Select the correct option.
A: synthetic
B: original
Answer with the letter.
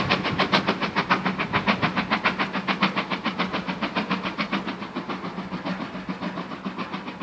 B